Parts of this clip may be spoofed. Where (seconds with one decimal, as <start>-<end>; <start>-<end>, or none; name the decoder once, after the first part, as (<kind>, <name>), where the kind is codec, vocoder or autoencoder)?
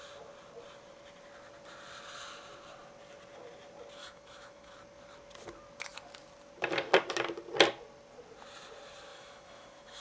4.0-4.7 (autoencoder, DAC-VAE); 9.1-10.0